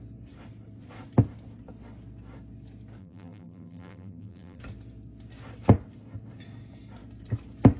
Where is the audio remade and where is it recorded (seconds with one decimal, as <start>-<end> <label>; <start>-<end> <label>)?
0.0-3.0 recorded; 3.0-4.6 remade; 4.6-7.8 recorded